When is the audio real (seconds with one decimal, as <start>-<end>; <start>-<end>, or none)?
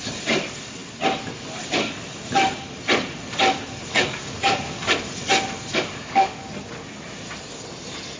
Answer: 0.0-3.9; 4.9-5.7; 6.5-8.2